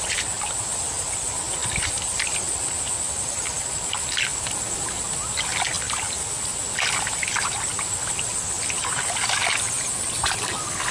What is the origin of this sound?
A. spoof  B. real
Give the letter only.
B